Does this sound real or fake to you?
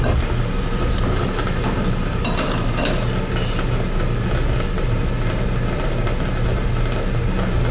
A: real